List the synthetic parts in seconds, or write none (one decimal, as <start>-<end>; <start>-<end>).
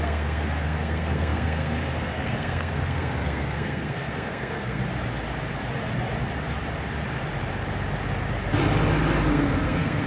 0.0-4.8; 9.3-10.1